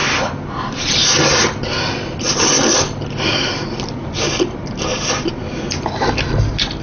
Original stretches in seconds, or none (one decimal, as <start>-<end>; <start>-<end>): 0.0-6.8